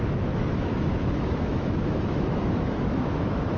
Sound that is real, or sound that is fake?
fake